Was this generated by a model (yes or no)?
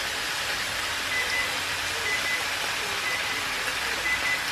no